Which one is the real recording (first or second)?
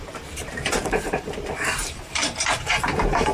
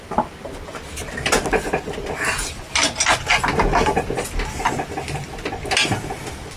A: second